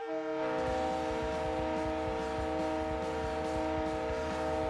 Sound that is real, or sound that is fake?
real